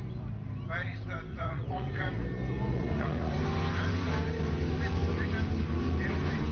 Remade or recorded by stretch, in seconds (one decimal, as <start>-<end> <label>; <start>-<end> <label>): 0.0-1.3 recorded; 1.3-2.1 remade; 2.1-2.7 recorded; 2.7-3.3 remade; 3.3-6.5 recorded